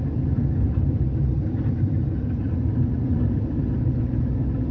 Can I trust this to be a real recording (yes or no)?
yes